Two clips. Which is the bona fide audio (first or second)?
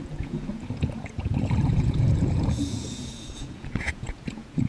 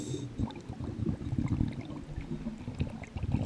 second